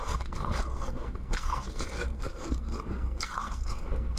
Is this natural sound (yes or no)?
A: no